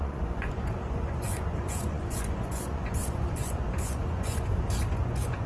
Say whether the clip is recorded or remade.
remade